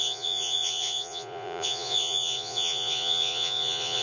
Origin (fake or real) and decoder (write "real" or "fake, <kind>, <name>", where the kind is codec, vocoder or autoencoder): fake, vocoder, Vocos